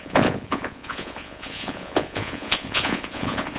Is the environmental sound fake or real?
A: fake